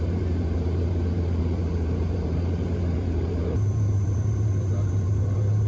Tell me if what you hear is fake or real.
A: fake